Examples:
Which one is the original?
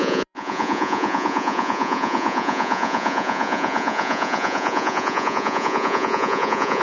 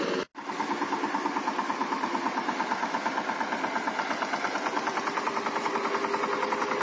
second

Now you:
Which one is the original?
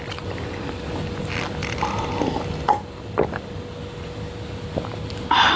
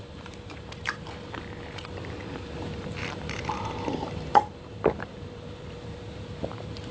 first